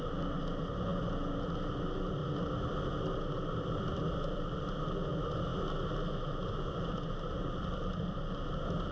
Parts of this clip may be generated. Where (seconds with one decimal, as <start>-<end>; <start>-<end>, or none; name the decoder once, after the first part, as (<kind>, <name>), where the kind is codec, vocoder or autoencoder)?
0.0-0.9 (vocoder, BigVGAN v2); 1.7-2.2; 3.5-5.5; 6.5-8.9